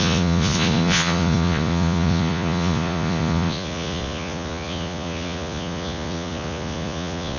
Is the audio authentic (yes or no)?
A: no